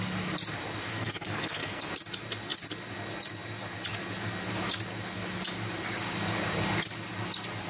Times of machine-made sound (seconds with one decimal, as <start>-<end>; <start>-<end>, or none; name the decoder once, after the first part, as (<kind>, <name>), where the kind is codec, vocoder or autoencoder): 0.9-1.9 (codec, SNAC)